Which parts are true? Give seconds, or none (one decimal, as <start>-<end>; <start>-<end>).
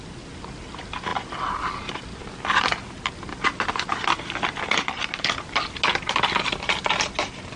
0.0-7.6